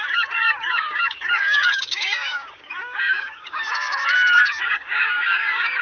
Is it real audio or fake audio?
fake